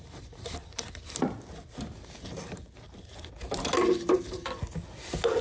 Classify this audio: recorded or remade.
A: recorded